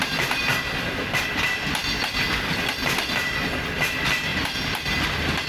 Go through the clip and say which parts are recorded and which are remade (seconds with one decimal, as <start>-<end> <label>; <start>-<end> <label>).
0.0-4.3 recorded; 4.3-5.1 remade; 5.1-5.5 recorded